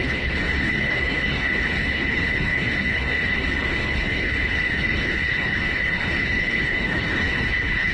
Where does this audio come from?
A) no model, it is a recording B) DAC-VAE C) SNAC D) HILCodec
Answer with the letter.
D